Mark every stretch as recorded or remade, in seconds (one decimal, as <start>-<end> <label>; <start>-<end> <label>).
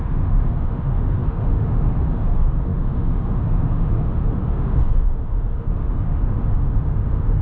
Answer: 0.0-7.4 remade